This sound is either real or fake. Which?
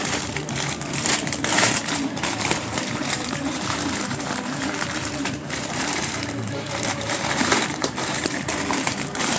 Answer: fake